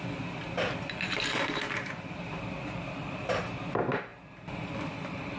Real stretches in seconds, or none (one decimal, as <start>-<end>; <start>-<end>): 0.0-5.4